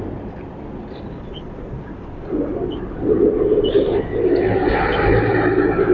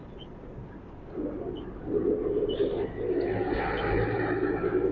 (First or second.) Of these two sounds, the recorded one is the second